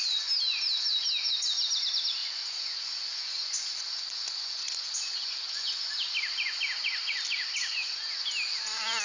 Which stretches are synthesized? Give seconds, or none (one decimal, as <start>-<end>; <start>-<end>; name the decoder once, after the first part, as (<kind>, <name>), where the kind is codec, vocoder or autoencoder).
2.2-5.9 (vocoder, Vocos); 7.7-8.2

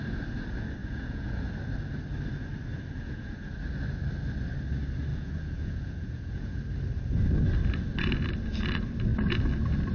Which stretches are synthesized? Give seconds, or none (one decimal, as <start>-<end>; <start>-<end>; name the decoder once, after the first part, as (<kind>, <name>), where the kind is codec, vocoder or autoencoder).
0.8-1.5 (vocoder, Vocos); 2.7-3.4; 5.1-6.6